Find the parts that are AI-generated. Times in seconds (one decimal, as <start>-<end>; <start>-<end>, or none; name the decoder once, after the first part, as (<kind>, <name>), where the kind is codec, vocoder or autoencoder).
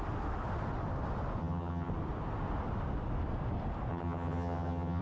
1.4-1.9 (vocoder, HiFi-GAN); 3.9-5.0